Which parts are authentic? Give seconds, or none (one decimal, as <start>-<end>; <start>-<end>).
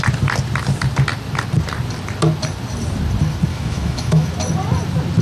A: 0.0-3.5; 4.3-5.2